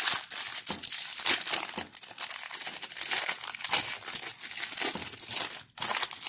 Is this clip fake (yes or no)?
no